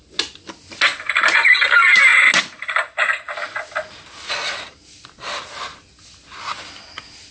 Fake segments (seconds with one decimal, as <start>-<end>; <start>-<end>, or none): none

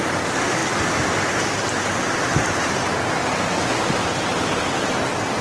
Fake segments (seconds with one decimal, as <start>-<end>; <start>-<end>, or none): none

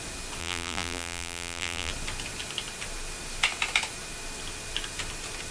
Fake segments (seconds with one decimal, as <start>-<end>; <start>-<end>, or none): 0.4-1.9

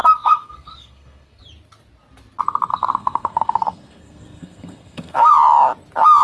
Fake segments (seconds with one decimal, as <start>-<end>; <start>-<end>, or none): 0.0-1.4; 2.7-5.3

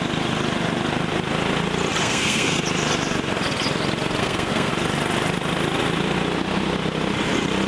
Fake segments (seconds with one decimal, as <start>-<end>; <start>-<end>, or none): 2.0-2.6; 4.2-4.7

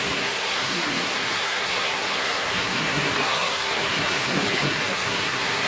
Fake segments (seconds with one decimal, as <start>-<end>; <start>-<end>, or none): 0.0-5.7